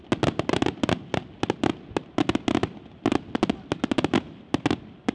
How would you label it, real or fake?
real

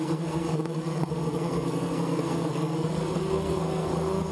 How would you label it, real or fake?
fake